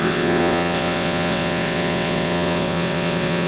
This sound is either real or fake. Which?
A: fake